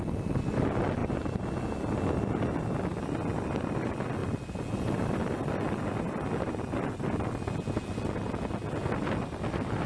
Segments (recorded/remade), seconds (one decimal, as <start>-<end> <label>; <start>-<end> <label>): 0.0-9.9 recorded